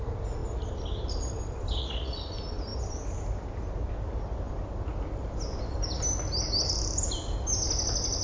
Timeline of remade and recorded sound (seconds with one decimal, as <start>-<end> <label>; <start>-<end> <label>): 0.0-1.8 recorded; 1.8-2.3 remade; 2.3-8.2 recorded